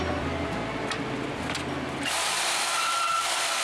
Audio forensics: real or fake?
real